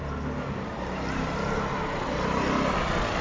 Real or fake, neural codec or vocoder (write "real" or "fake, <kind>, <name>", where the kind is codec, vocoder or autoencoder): real